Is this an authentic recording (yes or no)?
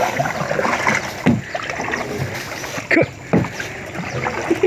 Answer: yes